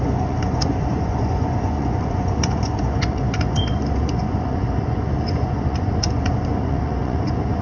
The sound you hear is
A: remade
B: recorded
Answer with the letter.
A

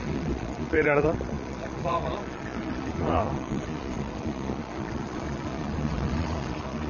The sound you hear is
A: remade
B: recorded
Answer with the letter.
A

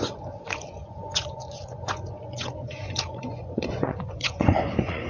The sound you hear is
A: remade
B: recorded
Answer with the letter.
A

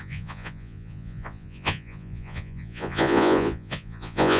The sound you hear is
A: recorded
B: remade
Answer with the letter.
B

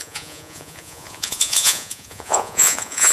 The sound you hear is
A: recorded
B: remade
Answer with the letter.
B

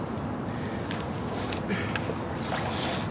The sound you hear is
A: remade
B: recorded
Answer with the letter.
B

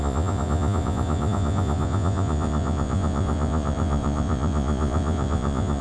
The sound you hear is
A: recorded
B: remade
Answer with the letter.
B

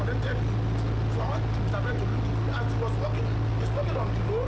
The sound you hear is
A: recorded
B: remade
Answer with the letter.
A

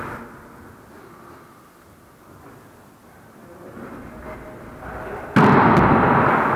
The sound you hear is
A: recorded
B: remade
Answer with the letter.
A